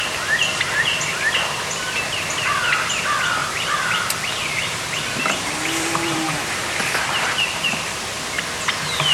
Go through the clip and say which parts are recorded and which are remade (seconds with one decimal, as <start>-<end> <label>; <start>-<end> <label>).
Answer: 0.0-3.4 recorded; 3.4-4.0 remade; 4.0-4.4 recorded; 4.4-8.4 remade; 8.4-9.1 recorded